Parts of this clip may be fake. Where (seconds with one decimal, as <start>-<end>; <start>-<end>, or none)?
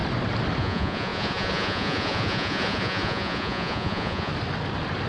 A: 0.6-4.3